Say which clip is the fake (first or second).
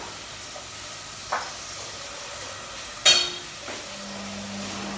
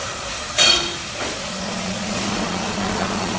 second